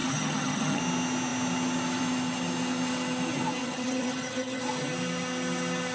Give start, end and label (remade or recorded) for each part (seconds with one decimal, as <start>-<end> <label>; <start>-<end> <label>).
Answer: 0.0-0.8 remade; 0.8-3.6 recorded; 3.6-4.6 remade; 4.6-5.9 recorded